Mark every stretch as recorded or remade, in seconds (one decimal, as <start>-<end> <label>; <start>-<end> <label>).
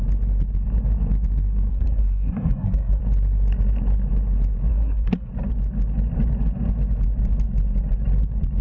0.0-1.7 recorded; 1.7-3.0 remade; 3.0-4.7 recorded; 4.7-5.3 remade; 5.3-8.6 recorded